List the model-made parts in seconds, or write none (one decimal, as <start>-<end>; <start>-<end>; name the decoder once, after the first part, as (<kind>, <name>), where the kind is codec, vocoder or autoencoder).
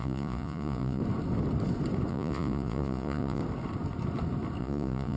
0.0-1.0 (vocoder, Vocos); 2.1-3.4; 4.6-5.2